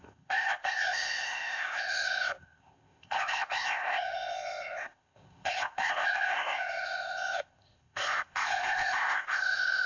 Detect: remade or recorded remade